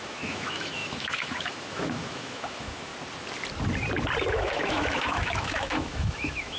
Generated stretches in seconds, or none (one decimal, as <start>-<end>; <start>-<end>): 0.0-2.9; 4.3-6.6

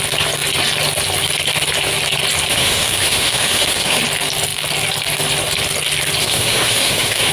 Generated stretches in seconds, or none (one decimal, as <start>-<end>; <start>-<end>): 2.5-4.0; 6.2-7.3

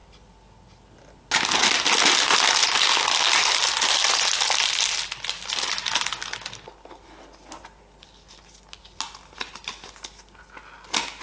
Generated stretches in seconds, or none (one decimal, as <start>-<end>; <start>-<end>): none